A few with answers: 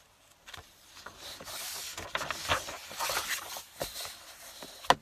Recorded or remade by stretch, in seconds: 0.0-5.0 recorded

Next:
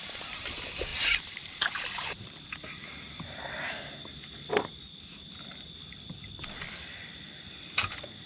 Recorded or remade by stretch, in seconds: 0.0-8.3 recorded

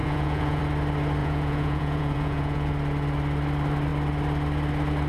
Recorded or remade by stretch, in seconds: 0.0-0.6 remade; 0.6-1.2 recorded; 1.2-2.7 remade; 2.7-5.1 recorded

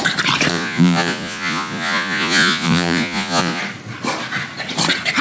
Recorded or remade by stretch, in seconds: 0.0-0.5 recorded; 0.5-3.6 remade; 3.6-5.2 recorded

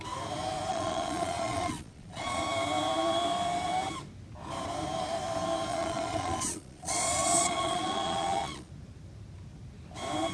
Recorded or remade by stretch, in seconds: 0.0-0.7 recorded; 0.7-2.4 remade; 2.4-5.7 recorded; 5.7-8.7 remade; 8.7-10.3 recorded

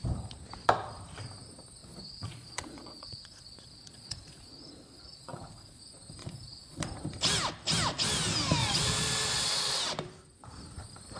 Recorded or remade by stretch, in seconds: 0.0-1.8 recorded; 1.8-5.8 remade; 5.8-6.2 recorded; 6.2-6.8 remade; 6.8-8.6 recorded; 8.6-9.8 remade; 9.8-11.2 recorded

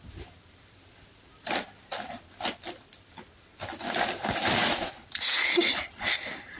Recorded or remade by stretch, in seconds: 0.0-4.6 recorded; 4.6-5.6 remade; 5.6-6.6 recorded